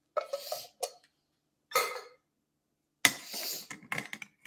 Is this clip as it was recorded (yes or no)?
yes